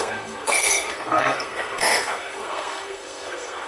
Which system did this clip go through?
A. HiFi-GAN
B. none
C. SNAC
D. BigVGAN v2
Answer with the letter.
C